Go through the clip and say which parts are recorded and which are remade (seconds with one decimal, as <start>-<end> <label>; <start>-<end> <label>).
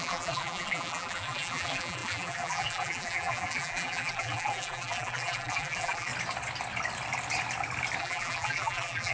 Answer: 0.0-6.1 remade; 6.1-8.0 recorded; 8.0-9.1 remade